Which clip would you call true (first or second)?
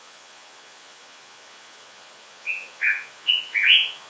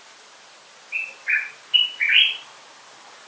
second